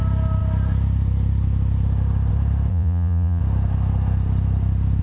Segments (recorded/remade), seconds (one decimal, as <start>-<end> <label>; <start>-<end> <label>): 0.0-2.7 recorded; 2.7-3.4 remade; 3.4-5.0 recorded